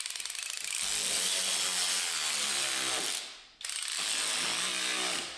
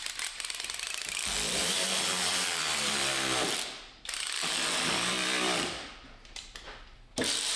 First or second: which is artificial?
second